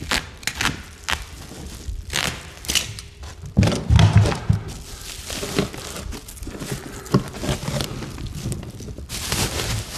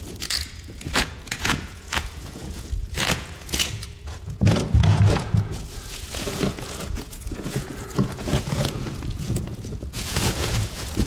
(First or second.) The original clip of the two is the first